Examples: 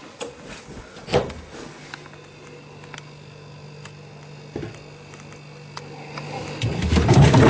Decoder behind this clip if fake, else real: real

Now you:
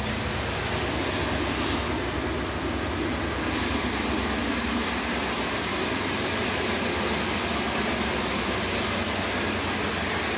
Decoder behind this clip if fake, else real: real